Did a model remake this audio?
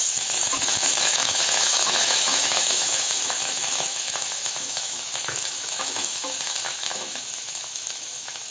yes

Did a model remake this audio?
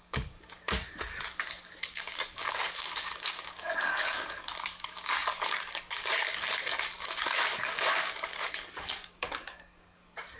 yes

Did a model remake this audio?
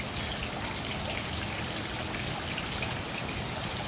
no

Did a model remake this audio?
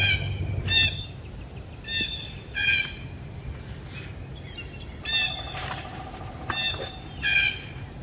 no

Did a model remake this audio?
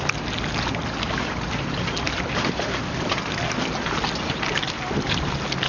no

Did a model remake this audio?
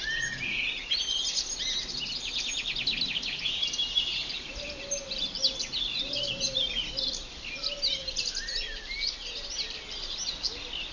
no